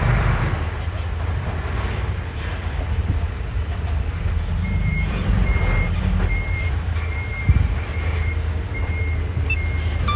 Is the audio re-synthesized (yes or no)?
yes